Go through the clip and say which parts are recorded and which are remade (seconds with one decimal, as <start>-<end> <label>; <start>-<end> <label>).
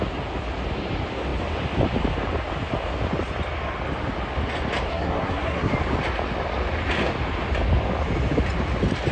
0.0-4.9 recorded; 4.9-5.7 remade; 5.7-9.1 recorded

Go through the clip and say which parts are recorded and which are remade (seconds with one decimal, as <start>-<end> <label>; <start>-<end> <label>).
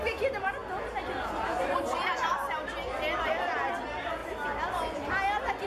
0.0-5.7 recorded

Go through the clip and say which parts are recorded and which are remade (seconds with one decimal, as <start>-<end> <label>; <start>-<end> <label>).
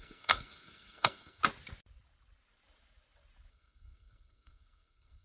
0.0-1.4 remade; 1.4-3.5 recorded; 3.5-5.2 remade